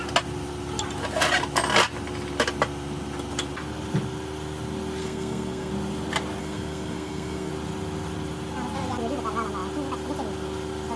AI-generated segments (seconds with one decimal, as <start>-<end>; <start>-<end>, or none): 5.0-5.7; 6.4-7.5